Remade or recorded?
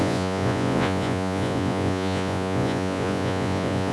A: remade